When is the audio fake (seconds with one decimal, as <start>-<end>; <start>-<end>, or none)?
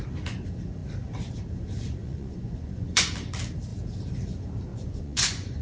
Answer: 2.0-3.1; 4.7-5.6